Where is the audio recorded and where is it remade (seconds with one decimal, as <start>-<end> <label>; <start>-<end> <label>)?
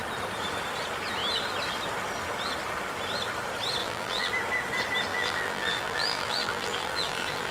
0.0-3.8 recorded; 3.8-4.3 remade; 4.3-5.1 recorded; 5.1-7.5 remade